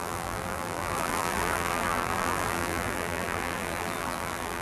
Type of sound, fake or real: fake